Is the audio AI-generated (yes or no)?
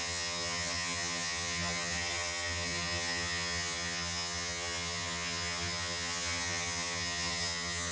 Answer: yes